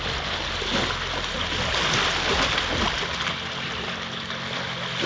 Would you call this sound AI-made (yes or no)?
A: no